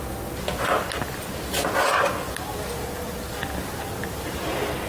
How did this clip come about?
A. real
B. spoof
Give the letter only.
A